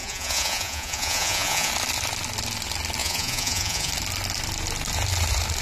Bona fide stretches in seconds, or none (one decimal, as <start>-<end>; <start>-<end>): 1.7-3.0; 3.9-5.6